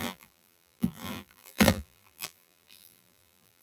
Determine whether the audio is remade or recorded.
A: remade